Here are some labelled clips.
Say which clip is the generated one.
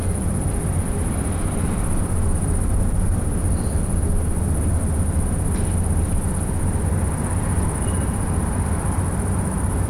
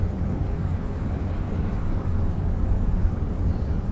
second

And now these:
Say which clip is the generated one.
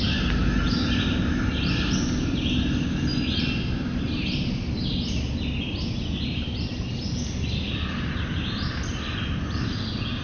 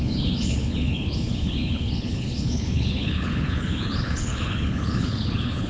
second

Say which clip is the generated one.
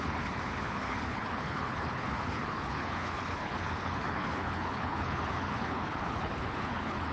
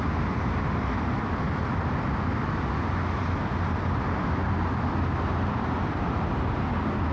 first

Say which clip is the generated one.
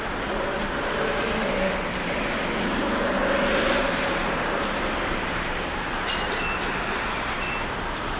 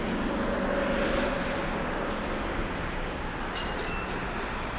first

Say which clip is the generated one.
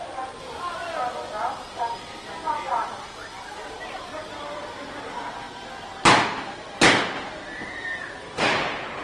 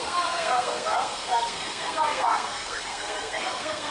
second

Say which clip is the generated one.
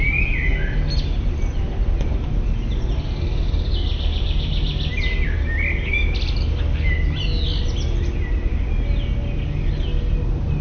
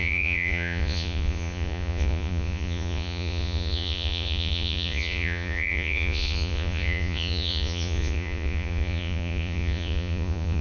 second